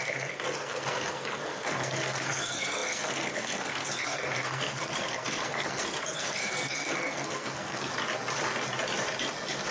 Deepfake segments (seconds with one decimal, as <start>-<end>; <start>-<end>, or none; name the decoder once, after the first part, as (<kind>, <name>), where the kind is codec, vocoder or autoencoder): 0.0-7.9 (codec, SNAC)